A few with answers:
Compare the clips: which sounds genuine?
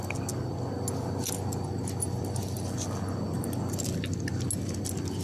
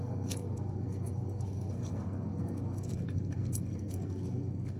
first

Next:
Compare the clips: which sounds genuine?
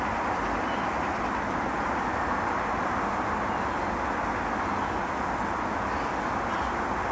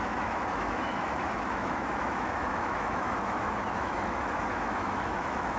first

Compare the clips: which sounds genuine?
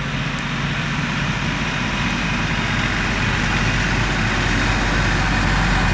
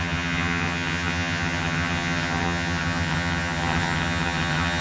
first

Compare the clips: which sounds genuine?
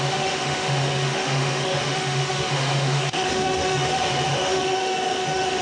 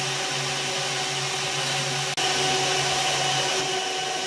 second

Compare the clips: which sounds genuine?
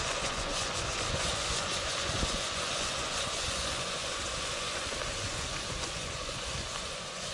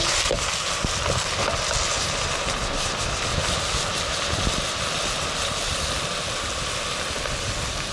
second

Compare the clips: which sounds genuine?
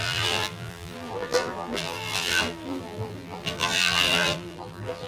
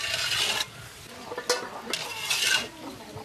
second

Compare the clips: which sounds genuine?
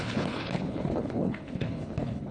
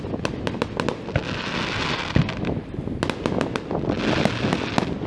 second